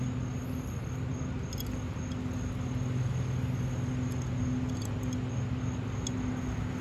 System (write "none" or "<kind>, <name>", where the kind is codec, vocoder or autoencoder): none